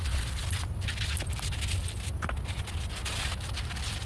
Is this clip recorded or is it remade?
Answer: recorded